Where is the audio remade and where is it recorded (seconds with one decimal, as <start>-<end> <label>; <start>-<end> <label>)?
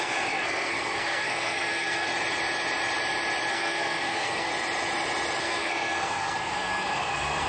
0.0-2.1 remade; 2.1-3.5 recorded; 3.5-4.5 remade; 4.5-5.4 recorded; 5.4-7.5 remade